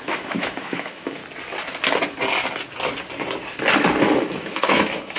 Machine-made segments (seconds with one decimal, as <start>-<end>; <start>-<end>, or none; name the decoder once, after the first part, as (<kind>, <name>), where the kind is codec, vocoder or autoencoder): 0.0-1.2 (autoencoder, DAC-VAE); 4.2-5.2